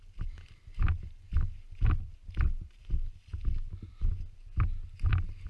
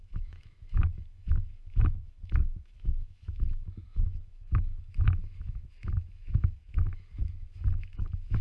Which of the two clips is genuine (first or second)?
first